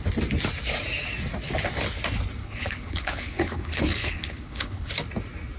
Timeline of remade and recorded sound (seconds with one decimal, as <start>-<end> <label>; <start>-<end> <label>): 0.0-2.4 recorded; 2.4-4.9 remade; 4.9-5.6 recorded